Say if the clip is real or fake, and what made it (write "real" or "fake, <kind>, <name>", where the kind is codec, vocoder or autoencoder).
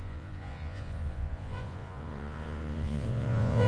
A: fake, vocoder, Vocos